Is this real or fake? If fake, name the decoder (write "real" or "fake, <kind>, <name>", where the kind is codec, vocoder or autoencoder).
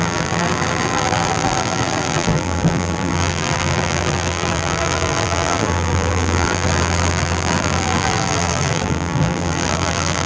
fake, vocoder, BigVGAN v2